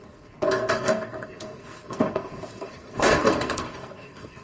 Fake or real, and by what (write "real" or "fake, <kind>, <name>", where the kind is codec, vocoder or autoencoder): fake, codec, SNAC